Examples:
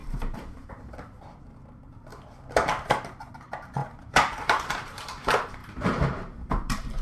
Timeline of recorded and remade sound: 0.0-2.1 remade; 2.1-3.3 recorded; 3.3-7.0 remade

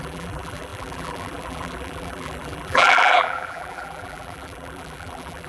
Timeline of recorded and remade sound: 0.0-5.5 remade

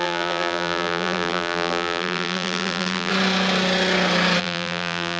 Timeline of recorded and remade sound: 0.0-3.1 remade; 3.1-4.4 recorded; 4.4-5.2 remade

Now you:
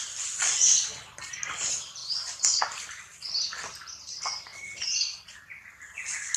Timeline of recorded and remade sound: 0.0-6.4 remade